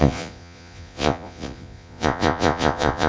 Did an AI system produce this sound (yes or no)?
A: yes